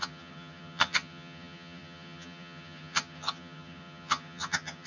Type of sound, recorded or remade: remade